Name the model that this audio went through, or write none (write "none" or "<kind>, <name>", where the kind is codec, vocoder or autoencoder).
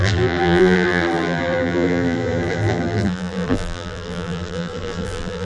vocoder, BigVGAN v2